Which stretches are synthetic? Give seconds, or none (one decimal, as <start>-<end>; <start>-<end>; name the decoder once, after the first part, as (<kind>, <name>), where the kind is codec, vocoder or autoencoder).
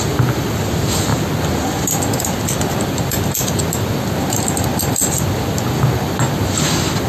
none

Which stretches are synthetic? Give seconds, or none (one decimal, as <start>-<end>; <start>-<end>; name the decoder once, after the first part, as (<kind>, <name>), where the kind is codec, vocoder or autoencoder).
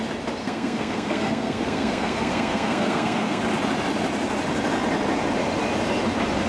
0.4-3.4 (codec, SNAC)